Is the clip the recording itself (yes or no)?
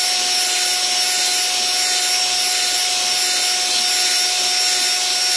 yes